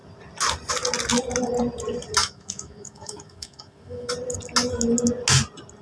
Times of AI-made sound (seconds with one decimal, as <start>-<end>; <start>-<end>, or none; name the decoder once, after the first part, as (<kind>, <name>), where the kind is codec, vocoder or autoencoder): 2.2-4.1 (autoencoder, DAC-VAE)